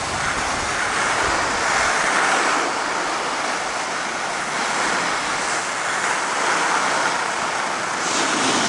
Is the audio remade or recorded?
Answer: recorded